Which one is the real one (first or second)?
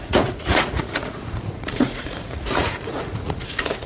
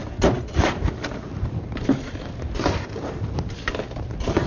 second